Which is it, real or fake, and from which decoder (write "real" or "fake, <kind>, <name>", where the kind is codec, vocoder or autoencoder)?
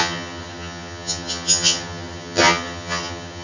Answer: fake, vocoder, HiFi-GAN